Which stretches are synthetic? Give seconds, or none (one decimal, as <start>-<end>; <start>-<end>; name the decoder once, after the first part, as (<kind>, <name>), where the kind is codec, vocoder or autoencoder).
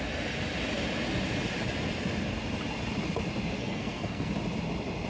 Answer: 3.6-4.3 (codec, SNAC)